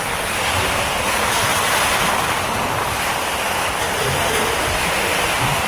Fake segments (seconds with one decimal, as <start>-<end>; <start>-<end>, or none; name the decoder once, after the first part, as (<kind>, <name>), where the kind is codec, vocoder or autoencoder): none

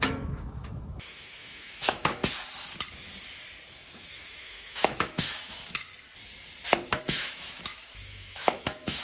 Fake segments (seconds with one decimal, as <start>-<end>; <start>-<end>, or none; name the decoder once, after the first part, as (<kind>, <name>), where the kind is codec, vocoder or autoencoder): 0.0-2.2 (autoencoder, DAC-VAE); 3.7-5.9; 7.0-9.0

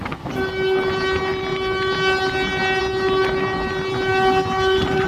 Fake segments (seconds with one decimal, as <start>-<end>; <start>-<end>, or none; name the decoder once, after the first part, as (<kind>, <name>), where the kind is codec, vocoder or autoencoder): none